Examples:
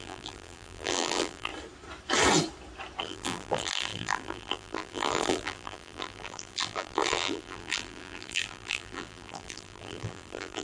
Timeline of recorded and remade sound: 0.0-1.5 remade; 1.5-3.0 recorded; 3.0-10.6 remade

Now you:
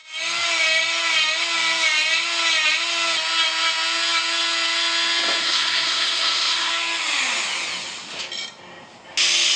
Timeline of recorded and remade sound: 0.0-5.4 recorded; 5.4-6.7 remade; 6.7-9.6 recorded

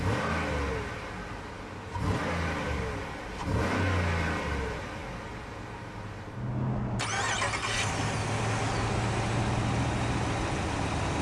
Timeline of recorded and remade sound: 0.0-11.2 recorded

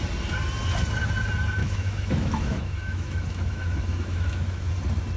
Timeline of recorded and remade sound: 0.0-1.6 recorded; 1.6-4.7 remade; 4.7-5.2 recorded

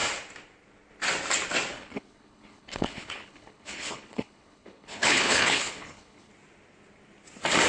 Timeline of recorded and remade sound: 0.0-1.7 recorded; 1.7-6.3 remade; 6.3-7.7 recorded